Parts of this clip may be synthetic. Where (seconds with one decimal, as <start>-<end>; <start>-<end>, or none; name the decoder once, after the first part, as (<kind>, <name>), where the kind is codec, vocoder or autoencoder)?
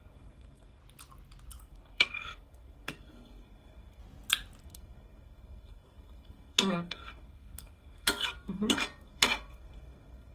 0.0-0.8 (codec, SNAC); 1.6-4.0; 4.6-10.3